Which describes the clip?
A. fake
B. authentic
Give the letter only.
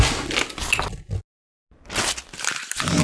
B